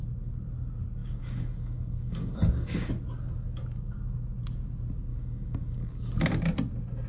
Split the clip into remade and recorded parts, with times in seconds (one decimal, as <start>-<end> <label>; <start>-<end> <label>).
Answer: 0.0-1.0 recorded; 1.0-2.9 remade; 2.9-5.1 recorded; 5.1-6.1 remade; 6.1-7.1 recorded